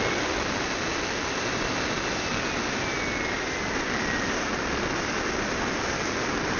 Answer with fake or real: real